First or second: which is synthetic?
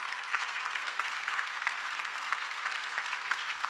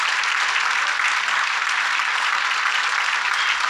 first